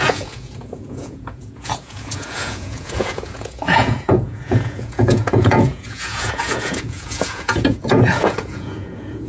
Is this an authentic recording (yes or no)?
no